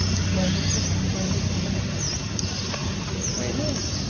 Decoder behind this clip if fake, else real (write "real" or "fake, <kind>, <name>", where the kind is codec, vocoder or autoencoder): real